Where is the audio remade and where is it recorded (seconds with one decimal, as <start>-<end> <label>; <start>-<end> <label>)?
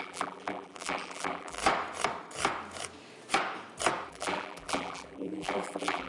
0.0-1.6 remade; 1.6-4.1 recorded; 4.1-6.1 remade